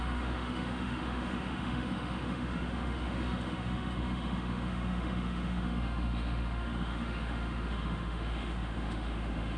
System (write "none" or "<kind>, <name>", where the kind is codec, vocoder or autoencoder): autoencoder, DAC-VAE